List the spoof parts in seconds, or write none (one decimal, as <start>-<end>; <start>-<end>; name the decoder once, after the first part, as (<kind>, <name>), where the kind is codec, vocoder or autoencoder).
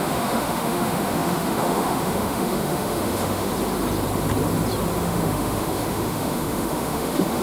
0.0-3.5 (autoencoder, DAC-VAE); 5.0-7.4